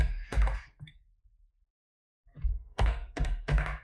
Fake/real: fake